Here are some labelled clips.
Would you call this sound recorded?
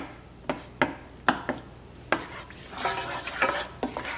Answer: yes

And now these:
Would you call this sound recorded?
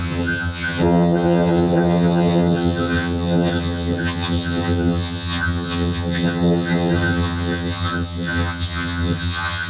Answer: no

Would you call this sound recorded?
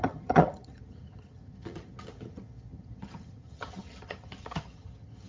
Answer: no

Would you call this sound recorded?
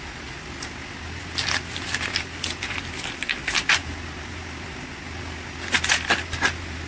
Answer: yes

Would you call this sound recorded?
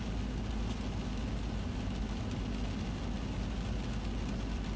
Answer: yes